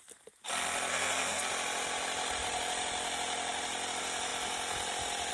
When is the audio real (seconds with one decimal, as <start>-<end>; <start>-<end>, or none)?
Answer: 0.0-0.9; 1.5-5.3

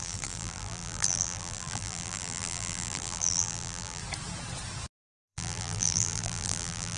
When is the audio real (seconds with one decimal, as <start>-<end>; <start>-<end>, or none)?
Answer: 4.0-5.1

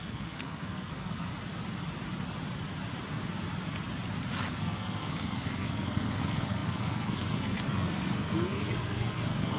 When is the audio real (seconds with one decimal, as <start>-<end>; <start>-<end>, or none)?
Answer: 1.3-4.5

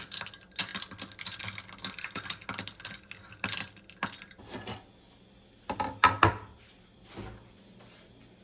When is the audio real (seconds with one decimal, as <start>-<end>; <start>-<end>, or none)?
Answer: 0.0-8.4